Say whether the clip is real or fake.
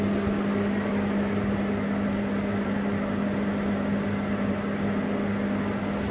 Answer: real